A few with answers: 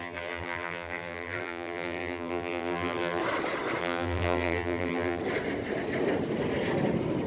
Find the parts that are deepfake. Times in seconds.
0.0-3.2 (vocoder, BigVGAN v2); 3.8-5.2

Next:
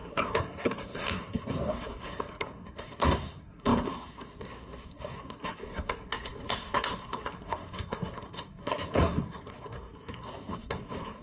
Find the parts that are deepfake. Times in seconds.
0.0-11.2 (codec, SNAC)

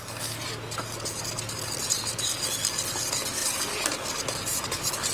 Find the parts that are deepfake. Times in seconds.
none

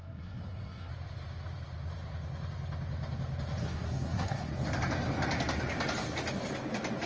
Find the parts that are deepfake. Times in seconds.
0.0-0.9 (codec, SNAC); 3.6-4.5

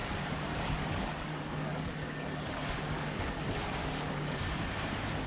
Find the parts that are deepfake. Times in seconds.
0.0-3.2 (codec, DAC); 3.8-4.4

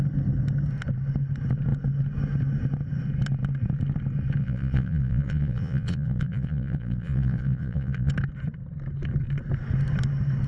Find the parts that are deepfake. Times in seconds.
4.4-8.1 (vocoder, Vocos)